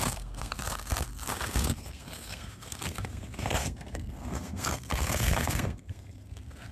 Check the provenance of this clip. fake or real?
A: fake